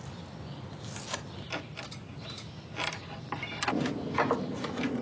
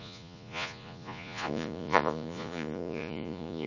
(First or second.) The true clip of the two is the first